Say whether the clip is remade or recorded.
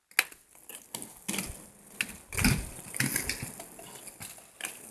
recorded